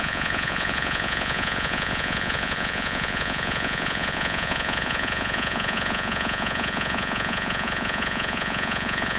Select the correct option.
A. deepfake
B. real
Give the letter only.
A